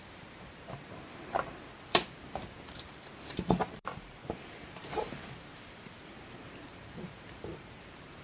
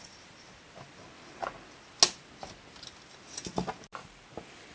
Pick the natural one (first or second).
second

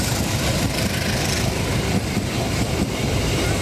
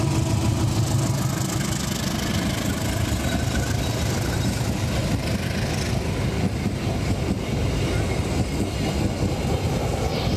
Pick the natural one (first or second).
second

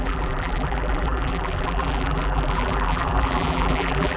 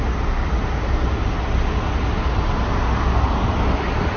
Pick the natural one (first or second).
second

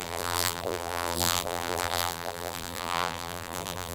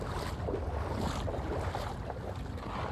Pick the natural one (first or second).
second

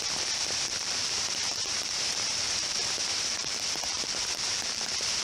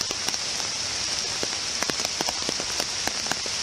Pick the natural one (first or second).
second